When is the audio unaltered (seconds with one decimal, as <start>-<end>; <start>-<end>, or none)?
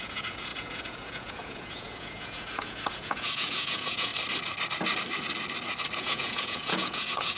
4.1-6.0